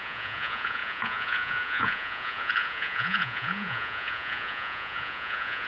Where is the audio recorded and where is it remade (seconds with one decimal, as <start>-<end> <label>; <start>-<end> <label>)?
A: 0.0-5.7 remade